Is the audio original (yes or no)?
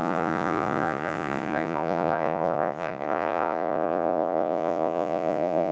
no